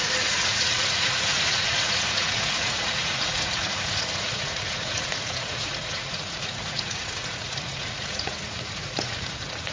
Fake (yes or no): yes